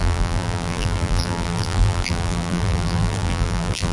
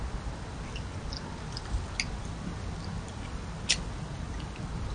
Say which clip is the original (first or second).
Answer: second